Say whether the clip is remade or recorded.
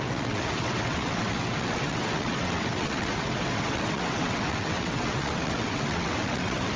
remade